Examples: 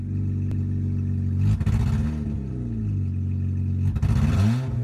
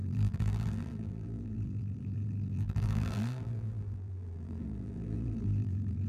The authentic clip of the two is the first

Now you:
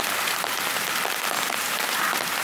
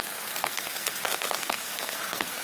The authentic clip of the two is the first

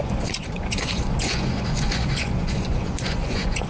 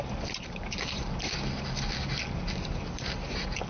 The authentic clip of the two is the second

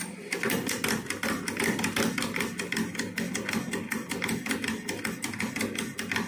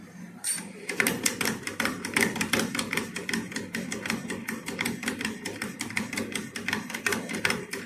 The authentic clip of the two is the first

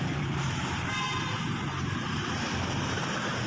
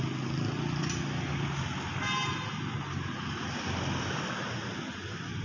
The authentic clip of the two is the second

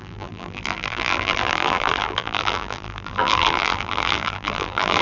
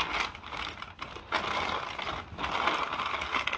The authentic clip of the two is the second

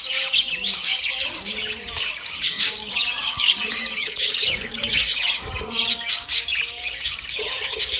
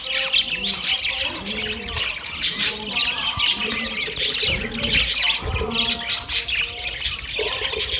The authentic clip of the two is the second